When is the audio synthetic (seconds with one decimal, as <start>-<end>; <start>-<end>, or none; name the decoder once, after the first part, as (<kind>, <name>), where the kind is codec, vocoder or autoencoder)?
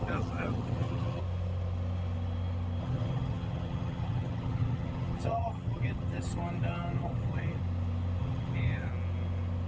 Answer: 0.0-1.2 (vocoder, HiFi-GAN); 2.8-7.6; 8.2-8.9